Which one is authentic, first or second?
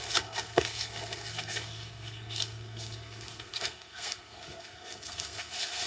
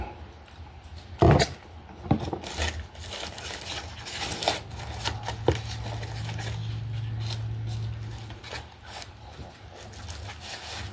second